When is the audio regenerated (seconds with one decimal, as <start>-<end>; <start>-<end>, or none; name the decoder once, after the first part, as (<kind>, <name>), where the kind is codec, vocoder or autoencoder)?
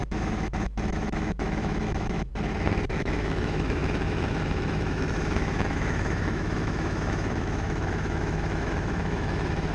0.0-2.3 (autoencoder, DAC-VAE); 2.9-9.7